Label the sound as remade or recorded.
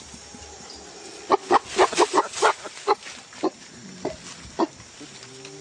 recorded